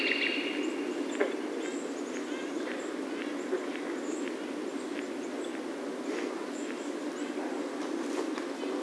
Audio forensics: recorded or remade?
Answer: recorded